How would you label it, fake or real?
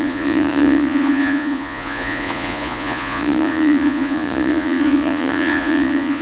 fake